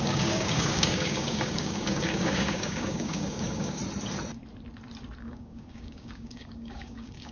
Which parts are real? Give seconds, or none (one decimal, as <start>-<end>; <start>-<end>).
3.8-5.2